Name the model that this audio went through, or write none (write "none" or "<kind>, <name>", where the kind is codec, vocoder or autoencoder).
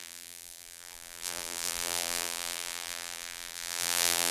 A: vocoder, BigVGAN v2